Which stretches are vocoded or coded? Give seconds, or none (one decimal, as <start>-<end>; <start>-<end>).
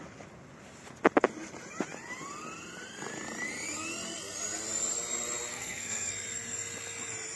5.5-6.1